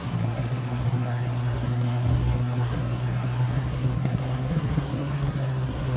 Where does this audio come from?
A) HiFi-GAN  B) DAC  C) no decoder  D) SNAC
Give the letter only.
D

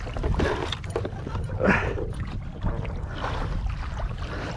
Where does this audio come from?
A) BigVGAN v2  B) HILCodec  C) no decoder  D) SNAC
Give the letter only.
C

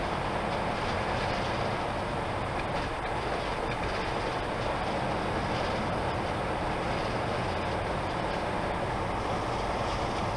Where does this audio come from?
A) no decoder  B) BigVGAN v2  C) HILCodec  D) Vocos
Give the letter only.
A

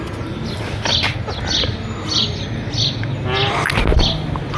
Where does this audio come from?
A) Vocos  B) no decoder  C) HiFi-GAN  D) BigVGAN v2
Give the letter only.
B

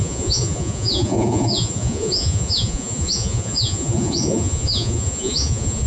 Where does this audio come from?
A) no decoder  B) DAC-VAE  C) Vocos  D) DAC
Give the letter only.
C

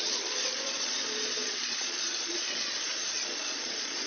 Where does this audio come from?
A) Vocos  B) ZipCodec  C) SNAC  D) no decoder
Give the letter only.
A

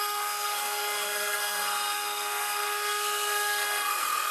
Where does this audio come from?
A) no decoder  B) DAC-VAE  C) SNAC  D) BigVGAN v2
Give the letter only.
C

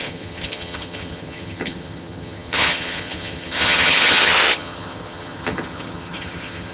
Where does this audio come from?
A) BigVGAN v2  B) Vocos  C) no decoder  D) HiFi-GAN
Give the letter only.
D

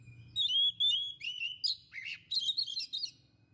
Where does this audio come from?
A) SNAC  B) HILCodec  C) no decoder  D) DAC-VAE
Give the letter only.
C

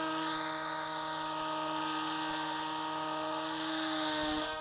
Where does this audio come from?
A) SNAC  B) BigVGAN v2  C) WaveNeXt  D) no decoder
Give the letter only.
D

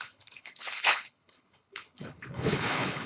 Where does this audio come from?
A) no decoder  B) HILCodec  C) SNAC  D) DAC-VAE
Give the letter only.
B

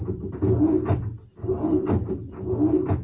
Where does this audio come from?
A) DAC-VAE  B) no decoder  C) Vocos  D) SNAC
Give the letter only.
B